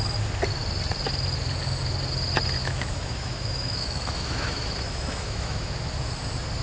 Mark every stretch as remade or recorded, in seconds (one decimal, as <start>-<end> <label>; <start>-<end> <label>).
0.0-2.6 recorded; 2.6-5.9 remade; 5.9-6.6 recorded

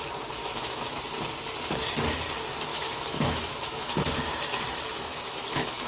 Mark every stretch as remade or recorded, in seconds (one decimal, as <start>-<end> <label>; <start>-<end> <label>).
0.0-0.4 recorded; 0.4-1.0 remade; 1.0-2.7 recorded; 2.7-4.1 remade; 4.1-4.9 recorded; 4.9-5.9 remade

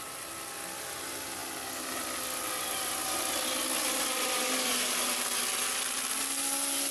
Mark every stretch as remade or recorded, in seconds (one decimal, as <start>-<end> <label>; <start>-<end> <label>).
0.0-6.9 recorded

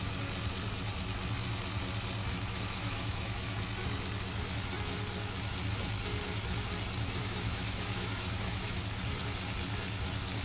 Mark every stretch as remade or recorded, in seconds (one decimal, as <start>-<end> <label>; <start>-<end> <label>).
0.0-2.2 recorded; 2.2-3.6 remade; 3.6-7.2 recorded; 7.2-9.0 remade; 9.0-10.4 recorded

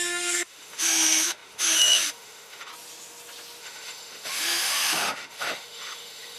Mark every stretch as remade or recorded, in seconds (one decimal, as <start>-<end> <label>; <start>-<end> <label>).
0.0-2.7 remade; 2.7-3.6 recorded; 3.6-6.4 remade

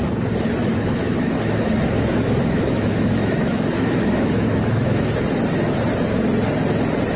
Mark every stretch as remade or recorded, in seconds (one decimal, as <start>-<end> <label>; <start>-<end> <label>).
0.0-0.7 recorded; 0.7-5.0 remade; 5.0-7.2 recorded